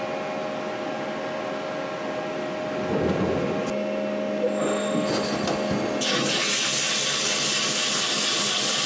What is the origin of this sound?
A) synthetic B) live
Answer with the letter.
B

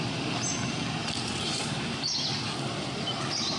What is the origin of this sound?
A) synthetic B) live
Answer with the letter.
B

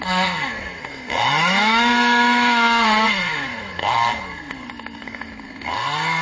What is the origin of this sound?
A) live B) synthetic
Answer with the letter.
B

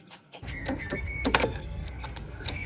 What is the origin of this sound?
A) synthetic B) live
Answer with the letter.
A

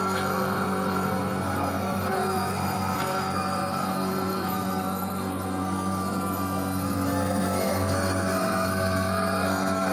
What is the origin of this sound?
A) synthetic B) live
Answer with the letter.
A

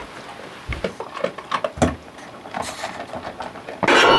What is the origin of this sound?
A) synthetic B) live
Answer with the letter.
B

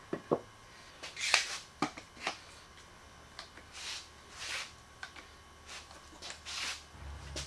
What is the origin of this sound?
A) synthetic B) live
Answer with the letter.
B